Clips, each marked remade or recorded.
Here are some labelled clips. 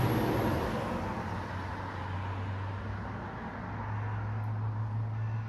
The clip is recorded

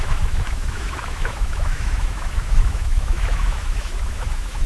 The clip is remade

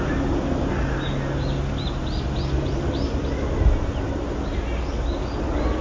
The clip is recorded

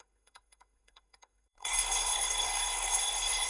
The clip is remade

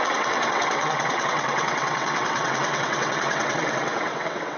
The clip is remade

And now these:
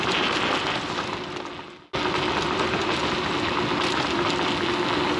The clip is recorded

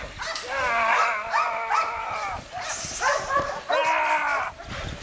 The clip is recorded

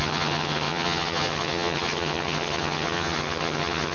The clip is remade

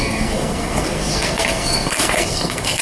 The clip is remade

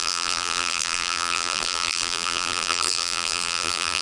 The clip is remade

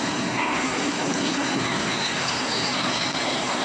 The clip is remade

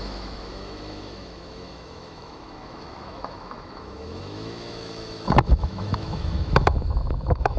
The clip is remade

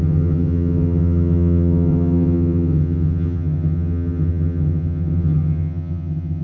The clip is remade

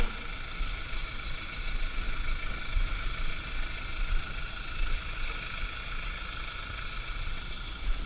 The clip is recorded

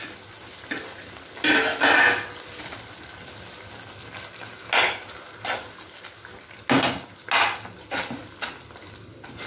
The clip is recorded